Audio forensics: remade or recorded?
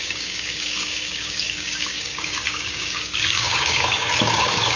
remade